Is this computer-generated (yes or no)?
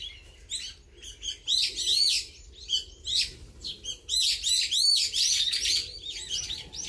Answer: no